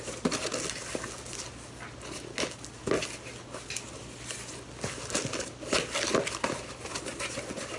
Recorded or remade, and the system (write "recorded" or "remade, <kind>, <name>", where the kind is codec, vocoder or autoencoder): recorded